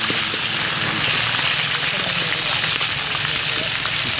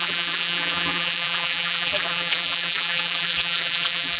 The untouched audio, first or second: first